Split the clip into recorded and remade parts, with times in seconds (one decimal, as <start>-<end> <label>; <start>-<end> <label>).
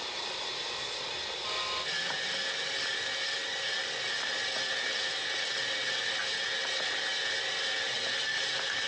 0.0-8.9 recorded